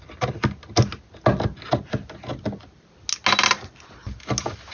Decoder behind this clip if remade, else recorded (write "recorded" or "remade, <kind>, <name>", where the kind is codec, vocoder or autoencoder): recorded